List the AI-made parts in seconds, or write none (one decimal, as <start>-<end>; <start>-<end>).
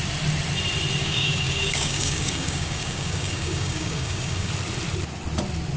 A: 1.0-4.5